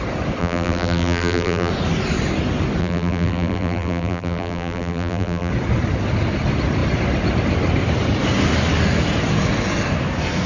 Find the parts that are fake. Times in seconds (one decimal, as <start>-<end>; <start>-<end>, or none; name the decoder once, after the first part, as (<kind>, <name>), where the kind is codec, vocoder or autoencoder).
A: 0.4-1.7 (vocoder, BigVGAN v2); 2.8-5.5